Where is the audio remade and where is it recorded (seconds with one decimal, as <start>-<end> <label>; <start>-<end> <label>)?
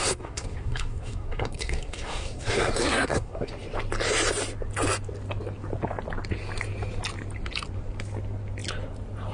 0.0-3.5 remade; 3.5-9.3 recorded